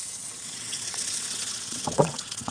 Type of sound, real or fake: fake